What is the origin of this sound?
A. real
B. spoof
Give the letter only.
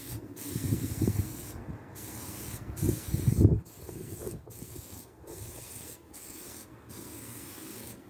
B